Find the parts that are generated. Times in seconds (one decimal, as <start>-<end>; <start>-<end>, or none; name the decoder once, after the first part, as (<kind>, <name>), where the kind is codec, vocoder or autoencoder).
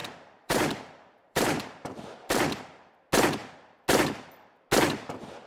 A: 0.0-2.9 (vocoder, BigVGAN v2)